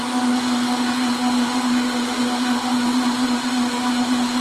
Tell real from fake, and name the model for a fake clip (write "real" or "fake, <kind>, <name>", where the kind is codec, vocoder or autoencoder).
real